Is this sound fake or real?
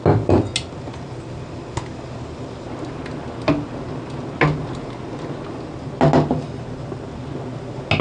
real